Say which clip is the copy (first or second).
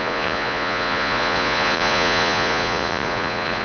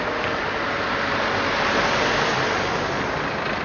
first